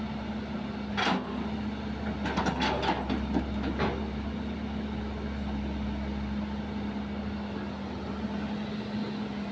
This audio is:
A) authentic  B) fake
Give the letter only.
A